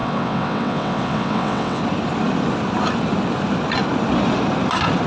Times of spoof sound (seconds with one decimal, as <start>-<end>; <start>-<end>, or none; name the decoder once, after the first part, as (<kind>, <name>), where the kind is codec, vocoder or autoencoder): 0.0-1.8 (vocoder, WaveNeXt)

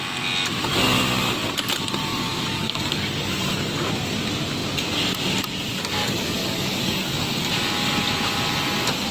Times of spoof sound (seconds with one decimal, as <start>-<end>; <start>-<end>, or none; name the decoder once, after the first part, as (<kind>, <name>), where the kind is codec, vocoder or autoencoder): 2.1-3.9 (codec, DAC); 6.0-7.5

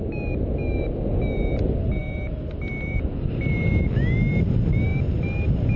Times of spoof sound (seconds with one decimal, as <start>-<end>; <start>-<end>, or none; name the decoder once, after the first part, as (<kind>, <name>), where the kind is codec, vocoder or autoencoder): none

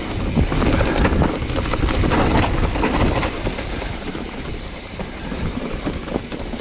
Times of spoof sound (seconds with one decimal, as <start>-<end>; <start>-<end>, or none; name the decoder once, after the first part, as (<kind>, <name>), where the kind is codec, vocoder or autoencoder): 3.2-6.6 (vocoder, BigVGAN v2)

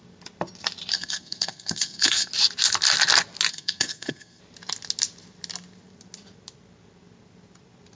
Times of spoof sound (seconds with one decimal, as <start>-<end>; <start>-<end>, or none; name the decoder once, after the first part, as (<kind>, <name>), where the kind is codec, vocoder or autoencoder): 0.9-2.3 (codec, SNAC); 3.5-4.4